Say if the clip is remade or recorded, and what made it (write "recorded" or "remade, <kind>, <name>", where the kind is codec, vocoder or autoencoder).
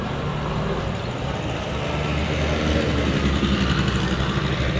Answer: recorded